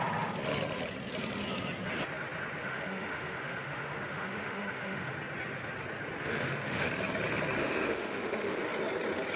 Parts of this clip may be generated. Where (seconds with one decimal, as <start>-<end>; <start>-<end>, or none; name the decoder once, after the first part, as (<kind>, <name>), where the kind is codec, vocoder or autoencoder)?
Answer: 2.6-5.1 (autoencoder, DAC-VAE); 6.2-6.9; 7.6-8.6